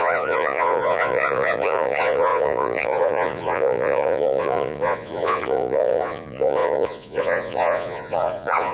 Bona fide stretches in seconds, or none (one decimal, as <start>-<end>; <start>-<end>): none